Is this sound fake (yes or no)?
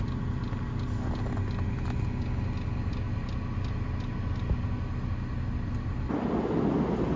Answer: no